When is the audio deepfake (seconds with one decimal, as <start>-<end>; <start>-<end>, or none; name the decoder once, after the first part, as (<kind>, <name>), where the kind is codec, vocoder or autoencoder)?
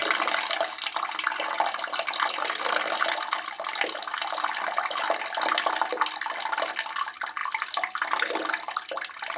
none